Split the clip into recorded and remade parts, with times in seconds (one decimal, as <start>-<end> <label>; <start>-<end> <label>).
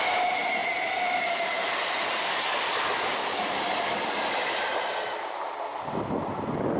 0.0-6.8 recorded